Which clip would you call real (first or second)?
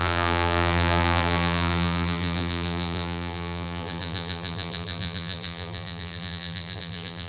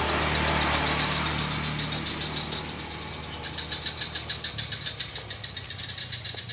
second